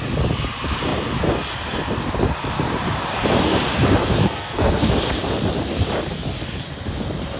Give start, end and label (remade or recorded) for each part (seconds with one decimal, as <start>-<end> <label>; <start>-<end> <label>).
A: 0.0-4.2 recorded; 4.2-4.9 remade; 4.9-7.4 recorded